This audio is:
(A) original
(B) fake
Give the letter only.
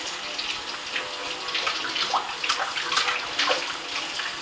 A